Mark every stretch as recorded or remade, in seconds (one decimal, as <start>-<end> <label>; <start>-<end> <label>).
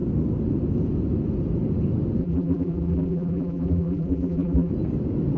0.0-2.2 recorded; 2.2-4.7 remade; 4.7-5.4 recorded